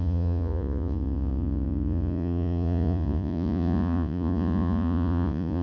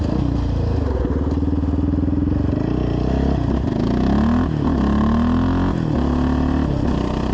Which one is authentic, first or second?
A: second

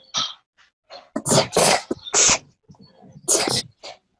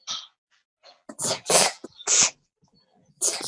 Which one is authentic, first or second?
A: first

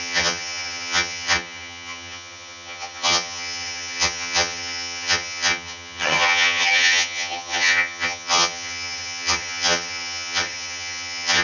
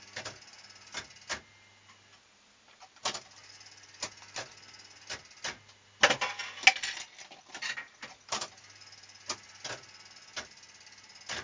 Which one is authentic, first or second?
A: second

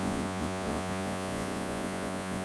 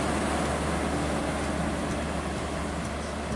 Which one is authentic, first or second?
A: second